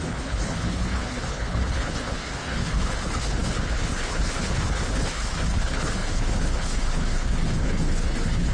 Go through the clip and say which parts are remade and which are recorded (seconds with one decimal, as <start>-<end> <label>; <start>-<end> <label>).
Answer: 0.0-8.5 remade